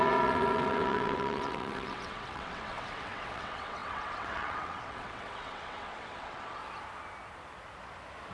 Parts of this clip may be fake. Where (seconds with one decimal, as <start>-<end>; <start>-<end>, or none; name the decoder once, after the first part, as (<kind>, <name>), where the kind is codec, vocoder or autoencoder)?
0.0-6.6 (vocoder, WaveNeXt)